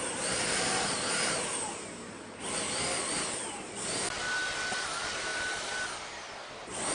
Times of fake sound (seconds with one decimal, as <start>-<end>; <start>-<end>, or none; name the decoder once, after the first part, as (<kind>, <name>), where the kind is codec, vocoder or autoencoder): none